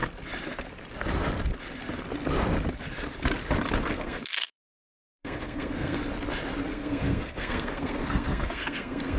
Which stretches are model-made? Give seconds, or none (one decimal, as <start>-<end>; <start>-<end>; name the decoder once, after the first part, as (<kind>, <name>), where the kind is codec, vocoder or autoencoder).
3.9-6.0 (codec, SNAC); 6.7-9.2